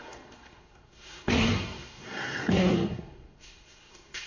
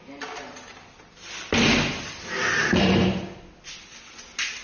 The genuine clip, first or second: second